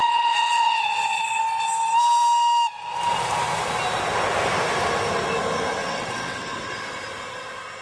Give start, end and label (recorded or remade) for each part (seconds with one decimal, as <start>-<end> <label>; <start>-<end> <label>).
0.0-1.4 remade; 1.4-5.8 recorded; 5.8-6.8 remade; 6.8-7.8 recorded